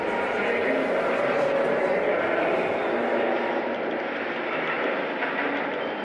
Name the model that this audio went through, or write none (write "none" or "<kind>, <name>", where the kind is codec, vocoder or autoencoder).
none